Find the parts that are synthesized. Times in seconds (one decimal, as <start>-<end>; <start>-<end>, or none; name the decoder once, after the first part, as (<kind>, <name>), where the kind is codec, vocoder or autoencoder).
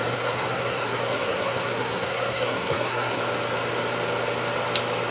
0.0-3.2 (codec, SNAC)